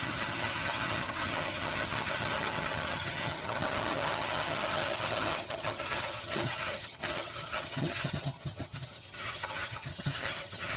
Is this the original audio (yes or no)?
no